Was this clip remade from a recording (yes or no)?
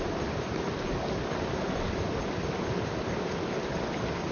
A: no